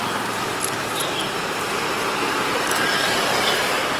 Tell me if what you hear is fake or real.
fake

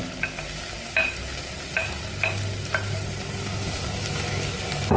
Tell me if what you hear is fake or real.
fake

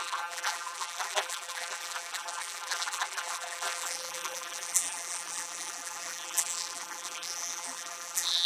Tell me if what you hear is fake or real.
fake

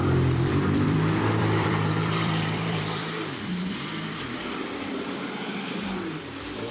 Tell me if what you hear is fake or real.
fake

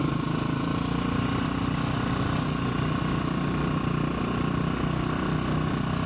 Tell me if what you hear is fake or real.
real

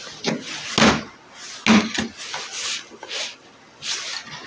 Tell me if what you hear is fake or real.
real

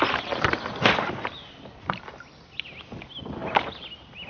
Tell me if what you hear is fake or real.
real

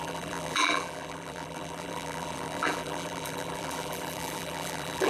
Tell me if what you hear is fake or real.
fake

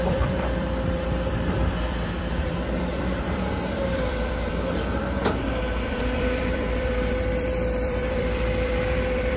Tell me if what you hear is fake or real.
fake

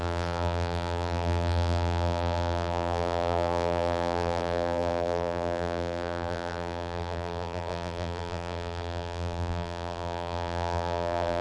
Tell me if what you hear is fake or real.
fake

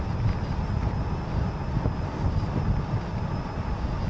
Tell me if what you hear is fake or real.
real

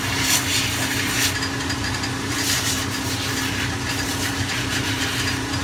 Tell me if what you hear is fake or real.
fake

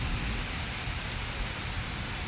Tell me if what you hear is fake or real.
real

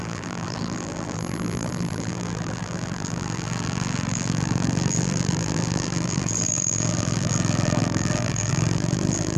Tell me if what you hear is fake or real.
fake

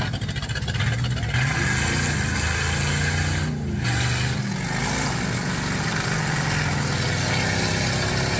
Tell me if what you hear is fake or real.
real